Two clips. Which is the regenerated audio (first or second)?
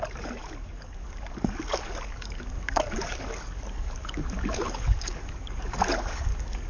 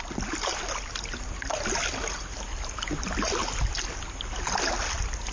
first